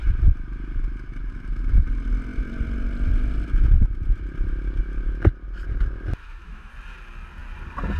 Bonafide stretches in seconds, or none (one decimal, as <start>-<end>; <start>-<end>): 0.0-6.2; 6.7-8.0